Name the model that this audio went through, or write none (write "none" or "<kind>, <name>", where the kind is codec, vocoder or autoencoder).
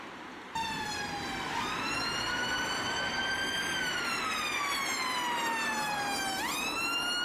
vocoder, BigVGAN v2